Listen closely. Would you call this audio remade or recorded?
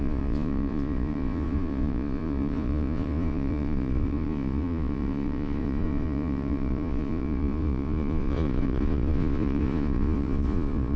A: remade